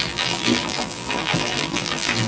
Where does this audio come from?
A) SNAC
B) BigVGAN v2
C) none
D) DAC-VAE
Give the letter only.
B